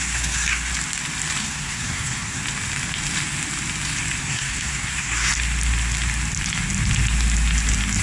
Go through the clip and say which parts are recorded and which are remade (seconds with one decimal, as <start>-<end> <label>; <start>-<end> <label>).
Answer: 0.0-0.7 remade; 0.7-1.4 recorded; 1.4-2.4 remade; 2.4-4.2 recorded; 4.2-5.3 remade; 5.3-8.0 recorded